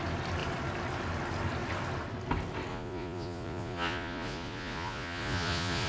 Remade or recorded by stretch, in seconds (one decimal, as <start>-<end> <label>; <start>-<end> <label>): 0.0-2.7 recorded; 2.7-5.9 remade

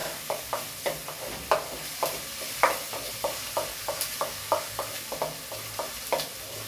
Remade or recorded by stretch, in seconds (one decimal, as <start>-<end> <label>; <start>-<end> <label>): 0.0-0.5 remade; 0.5-3.7 recorded; 3.7-5.1 remade; 5.1-6.7 recorded

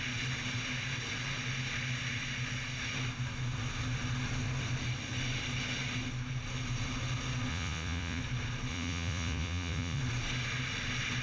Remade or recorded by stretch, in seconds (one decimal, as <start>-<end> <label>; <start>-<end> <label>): 0.0-7.5 recorded; 7.5-8.2 remade; 8.2-8.7 recorded; 8.7-10.0 remade; 10.0-11.2 recorded